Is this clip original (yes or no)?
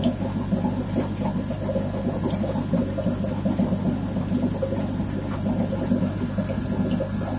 yes